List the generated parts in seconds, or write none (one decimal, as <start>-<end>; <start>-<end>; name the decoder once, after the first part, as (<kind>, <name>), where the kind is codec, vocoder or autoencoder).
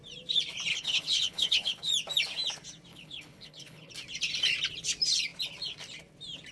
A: 0.7-1.9 (codec, HILCodec); 2.9-3.9